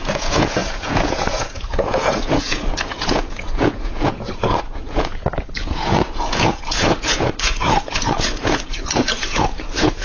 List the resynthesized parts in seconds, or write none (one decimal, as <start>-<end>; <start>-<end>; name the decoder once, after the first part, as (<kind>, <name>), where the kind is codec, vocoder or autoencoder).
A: 0.0-10.0 (vocoder, Vocos)